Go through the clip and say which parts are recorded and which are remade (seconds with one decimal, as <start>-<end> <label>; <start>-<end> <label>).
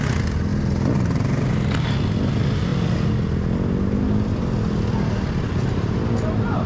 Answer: 0.0-6.7 recorded